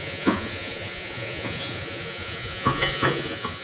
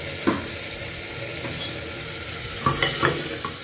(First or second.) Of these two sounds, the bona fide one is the second